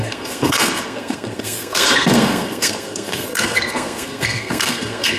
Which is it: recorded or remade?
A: remade